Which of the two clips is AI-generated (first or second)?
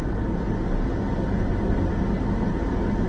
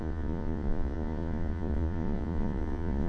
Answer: second